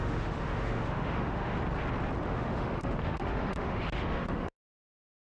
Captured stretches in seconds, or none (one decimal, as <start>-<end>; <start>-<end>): 1.6-2.3